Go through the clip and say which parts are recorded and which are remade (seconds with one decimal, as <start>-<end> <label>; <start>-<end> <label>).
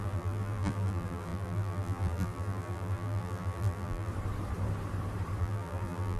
0.0-4.1 remade; 4.1-5.4 recorded; 5.4-6.2 remade